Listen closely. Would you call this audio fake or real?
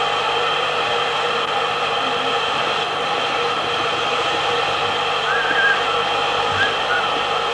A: real